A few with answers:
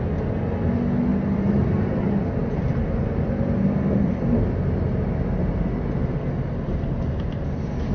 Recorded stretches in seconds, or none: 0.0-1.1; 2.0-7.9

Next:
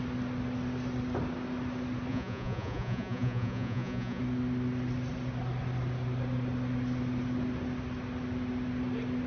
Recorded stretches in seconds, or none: 0.0-2.1; 4.2-9.3

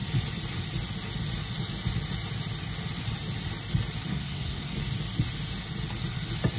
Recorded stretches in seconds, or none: 0.0-4.1; 4.7-6.6

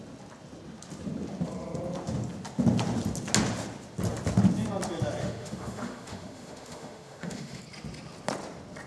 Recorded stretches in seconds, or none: 0.0-5.2; 7.6-8.9